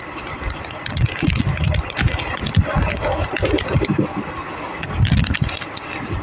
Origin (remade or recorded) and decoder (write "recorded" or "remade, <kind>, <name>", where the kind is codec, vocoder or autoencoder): recorded